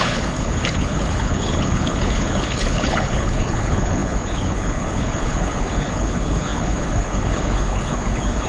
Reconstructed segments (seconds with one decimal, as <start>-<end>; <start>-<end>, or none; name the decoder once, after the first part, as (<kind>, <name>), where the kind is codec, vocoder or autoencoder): 0.0-8.5 (codec, HILCodec)